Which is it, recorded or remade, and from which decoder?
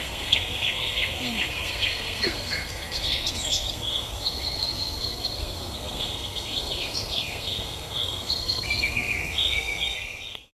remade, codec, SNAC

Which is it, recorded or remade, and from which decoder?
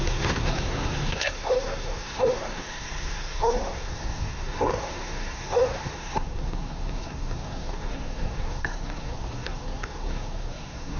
remade, codec, SNAC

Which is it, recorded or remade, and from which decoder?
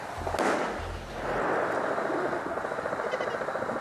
recorded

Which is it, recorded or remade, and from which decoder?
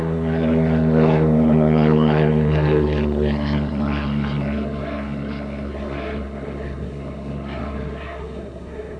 remade, codec, SNAC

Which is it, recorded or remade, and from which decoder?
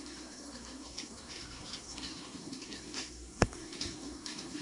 remade, codec, SNAC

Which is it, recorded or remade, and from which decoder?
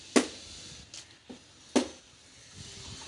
recorded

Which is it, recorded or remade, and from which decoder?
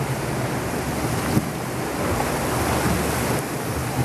recorded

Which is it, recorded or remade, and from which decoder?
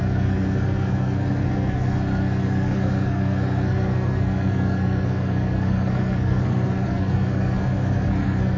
remade, codec, SNAC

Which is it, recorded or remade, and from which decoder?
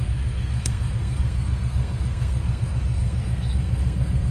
remade, codec, SNAC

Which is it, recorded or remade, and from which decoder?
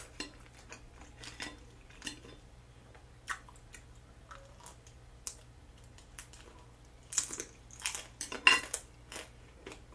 recorded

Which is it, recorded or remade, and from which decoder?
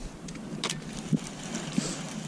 recorded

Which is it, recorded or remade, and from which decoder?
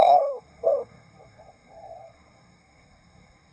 remade, codec, SNAC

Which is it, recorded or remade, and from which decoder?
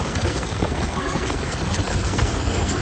remade, codec, SNAC